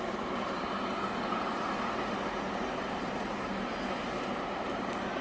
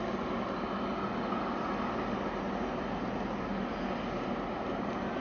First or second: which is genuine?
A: second